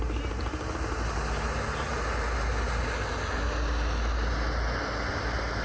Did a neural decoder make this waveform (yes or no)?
no